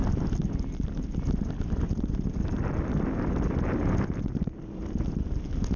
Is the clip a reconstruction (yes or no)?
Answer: no